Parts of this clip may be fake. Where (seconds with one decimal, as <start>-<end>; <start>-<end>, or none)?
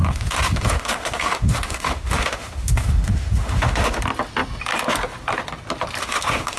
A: 0.0-4.0; 6.0-6.6